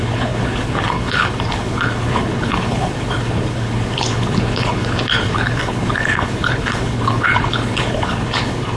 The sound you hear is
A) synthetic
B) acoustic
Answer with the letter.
A